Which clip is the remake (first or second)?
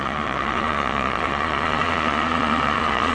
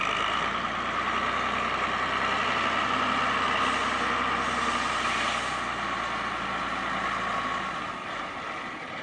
first